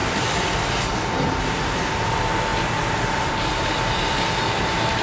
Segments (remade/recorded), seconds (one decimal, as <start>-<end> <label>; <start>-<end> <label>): 0.0-2.5 recorded; 2.5-5.0 remade